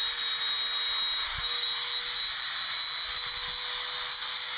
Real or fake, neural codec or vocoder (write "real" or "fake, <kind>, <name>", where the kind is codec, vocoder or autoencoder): real